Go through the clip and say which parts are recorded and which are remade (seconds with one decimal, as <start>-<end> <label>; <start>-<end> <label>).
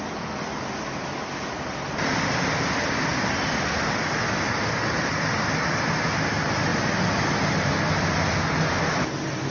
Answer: 0.0-9.5 recorded